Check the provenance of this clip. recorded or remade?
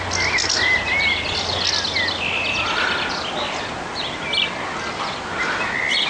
recorded